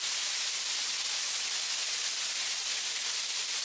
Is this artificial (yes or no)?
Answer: no